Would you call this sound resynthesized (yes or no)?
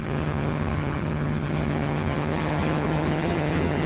yes